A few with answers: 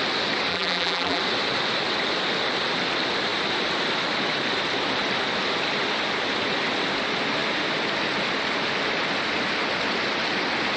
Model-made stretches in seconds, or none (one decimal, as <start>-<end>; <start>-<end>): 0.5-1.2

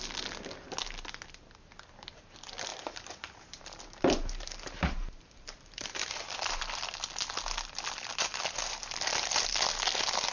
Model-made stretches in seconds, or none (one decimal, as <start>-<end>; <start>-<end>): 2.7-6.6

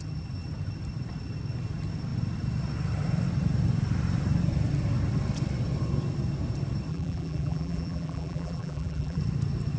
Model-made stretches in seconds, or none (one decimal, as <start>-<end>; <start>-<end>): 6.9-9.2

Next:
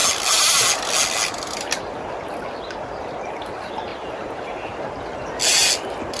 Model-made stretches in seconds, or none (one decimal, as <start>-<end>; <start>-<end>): 3.9-5.4

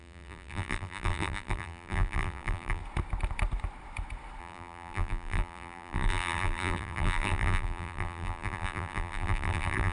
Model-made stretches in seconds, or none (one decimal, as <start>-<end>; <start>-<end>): 0.0-2.8; 4.4-9.9

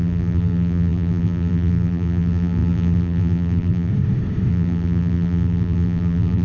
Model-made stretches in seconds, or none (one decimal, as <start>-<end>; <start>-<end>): 0.0-3.9; 4.5-6.4